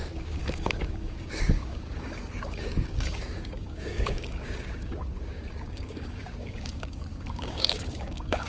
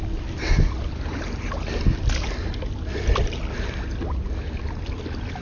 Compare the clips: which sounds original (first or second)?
second